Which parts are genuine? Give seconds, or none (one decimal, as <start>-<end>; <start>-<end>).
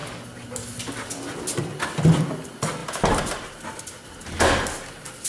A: 0.0-2.8; 3.8-5.3